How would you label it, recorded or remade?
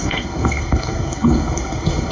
remade